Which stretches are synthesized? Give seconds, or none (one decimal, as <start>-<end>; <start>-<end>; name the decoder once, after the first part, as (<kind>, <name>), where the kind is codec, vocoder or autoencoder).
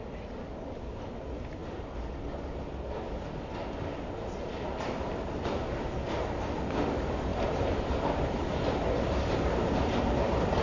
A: none